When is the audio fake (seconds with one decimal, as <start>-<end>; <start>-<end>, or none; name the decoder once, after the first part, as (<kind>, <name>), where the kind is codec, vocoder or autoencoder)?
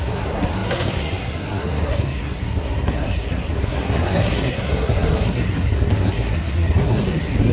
0.0-7.5 (codec, SNAC)